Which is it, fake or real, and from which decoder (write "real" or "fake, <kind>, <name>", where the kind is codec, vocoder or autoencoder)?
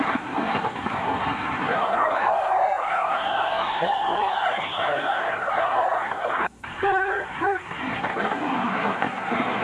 fake, codec, SNAC